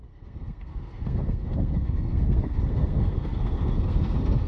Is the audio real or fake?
fake